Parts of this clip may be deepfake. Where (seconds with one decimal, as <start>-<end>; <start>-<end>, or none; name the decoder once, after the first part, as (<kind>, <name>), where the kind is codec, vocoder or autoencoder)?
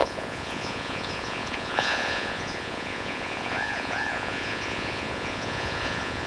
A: 0.0-6.3 (vocoder, Vocos)